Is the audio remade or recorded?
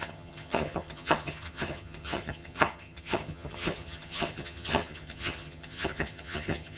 remade